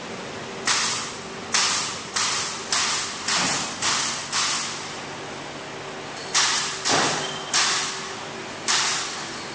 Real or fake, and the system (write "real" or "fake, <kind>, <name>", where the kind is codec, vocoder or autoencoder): real